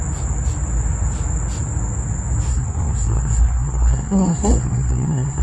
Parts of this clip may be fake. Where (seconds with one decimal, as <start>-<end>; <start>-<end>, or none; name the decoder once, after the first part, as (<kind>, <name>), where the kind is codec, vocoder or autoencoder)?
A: 2.5-5.4 (codec, SNAC)